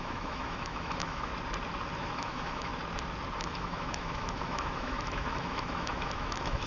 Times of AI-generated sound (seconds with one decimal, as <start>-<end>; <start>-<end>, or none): 0.0-1.3; 2.0-2.7; 3.4-6.7